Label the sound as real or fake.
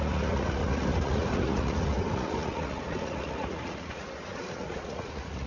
fake